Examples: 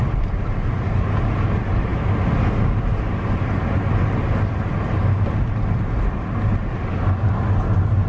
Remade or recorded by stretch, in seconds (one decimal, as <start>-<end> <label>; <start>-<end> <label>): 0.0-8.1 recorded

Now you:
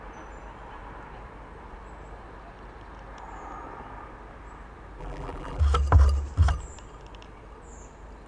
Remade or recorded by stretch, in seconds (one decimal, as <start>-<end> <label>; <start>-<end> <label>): 0.0-5.0 recorded; 5.0-5.6 remade; 5.6-8.3 recorded

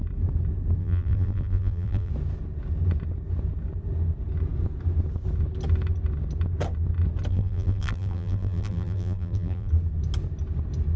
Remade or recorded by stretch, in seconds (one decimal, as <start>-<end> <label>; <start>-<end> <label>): 0.0-0.8 recorded; 0.8-2.1 remade; 2.1-7.3 recorded; 7.3-9.7 remade; 9.7-11.0 recorded

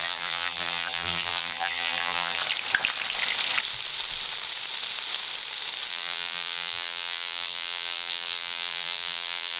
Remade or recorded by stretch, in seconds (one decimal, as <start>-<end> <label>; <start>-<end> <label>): 0.0-2.4 remade; 2.4-5.9 recorded; 5.9-9.6 remade